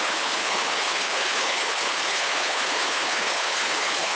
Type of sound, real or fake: fake